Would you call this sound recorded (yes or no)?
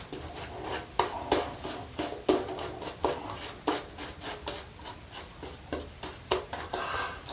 yes